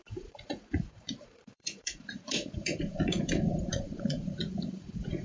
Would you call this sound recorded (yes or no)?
no